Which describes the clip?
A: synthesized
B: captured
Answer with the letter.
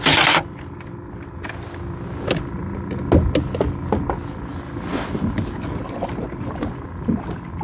B